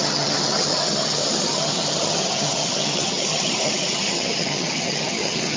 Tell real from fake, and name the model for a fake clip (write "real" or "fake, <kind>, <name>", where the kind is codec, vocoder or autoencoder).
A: fake, vocoder, HiFi-GAN